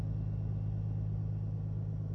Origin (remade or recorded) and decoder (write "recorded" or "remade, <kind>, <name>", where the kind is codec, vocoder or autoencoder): recorded